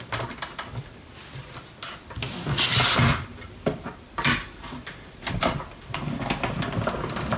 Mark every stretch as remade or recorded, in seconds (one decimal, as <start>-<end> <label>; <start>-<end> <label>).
0.0-3.1 recorded; 3.1-6.1 remade; 6.1-7.4 recorded